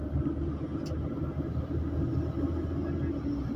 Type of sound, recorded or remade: recorded